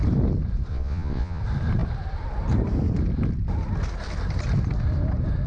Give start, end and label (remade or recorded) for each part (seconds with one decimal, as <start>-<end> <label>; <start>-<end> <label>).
0.0-0.7 recorded; 0.7-1.4 remade; 1.4-5.5 recorded